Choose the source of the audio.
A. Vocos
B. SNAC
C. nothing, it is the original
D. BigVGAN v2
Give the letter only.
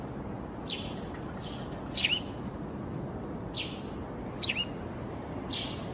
C